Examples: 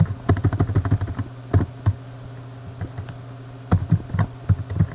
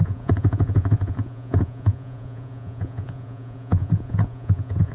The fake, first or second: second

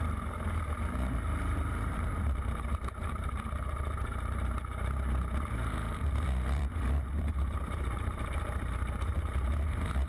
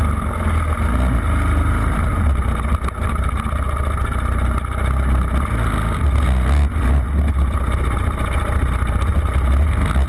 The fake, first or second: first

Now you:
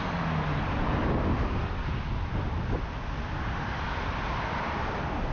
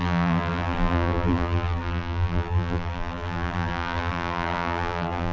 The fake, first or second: second